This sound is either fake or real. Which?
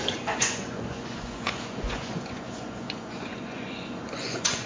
fake